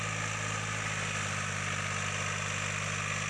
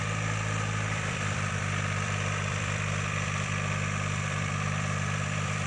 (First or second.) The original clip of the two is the first